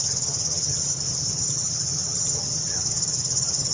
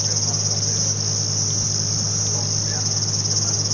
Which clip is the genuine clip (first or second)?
second